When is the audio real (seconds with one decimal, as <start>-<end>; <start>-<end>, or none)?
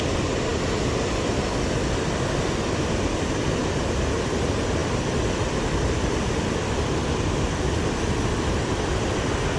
0.0-9.6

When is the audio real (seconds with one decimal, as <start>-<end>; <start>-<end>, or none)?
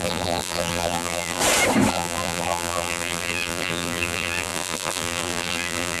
1.4-1.9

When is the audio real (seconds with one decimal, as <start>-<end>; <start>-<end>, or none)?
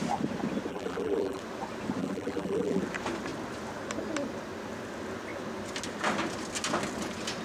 0.0-0.7; 1.4-2.0; 2.8-7.4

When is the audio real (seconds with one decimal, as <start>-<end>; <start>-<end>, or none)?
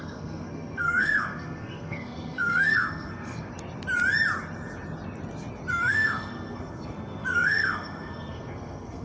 3.5-5.7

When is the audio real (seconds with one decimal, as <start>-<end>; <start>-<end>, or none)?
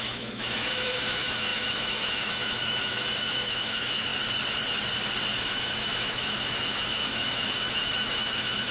4.1-5.4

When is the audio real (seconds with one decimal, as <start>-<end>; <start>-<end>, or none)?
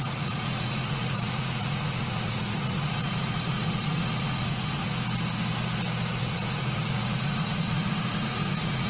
4.9-6.2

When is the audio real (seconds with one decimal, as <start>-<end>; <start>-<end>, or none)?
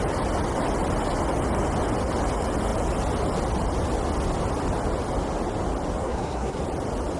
0.0-6.0; 6.6-7.2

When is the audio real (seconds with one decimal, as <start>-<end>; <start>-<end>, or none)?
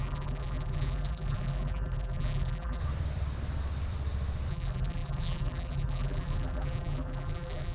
2.8-4.5